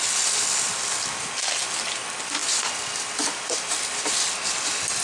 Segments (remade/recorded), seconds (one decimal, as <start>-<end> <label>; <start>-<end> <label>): 0.0-5.0 recorded